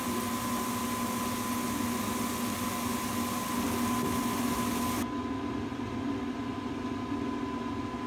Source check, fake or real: real